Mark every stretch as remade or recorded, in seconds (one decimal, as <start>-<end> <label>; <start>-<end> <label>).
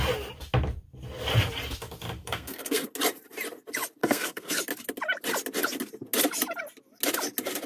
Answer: 0.0-2.2 recorded; 2.2-2.9 remade; 2.9-4.0 recorded; 4.0-4.6 remade; 4.6-7.7 recorded